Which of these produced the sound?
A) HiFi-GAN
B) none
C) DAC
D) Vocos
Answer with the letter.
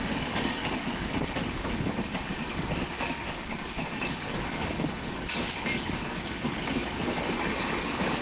C